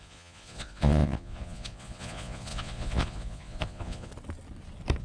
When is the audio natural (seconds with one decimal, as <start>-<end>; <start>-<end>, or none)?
4.1-5.0